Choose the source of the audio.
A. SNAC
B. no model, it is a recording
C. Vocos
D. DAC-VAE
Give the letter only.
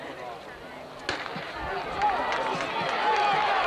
B